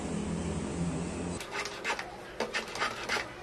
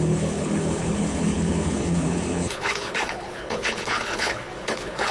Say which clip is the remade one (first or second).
second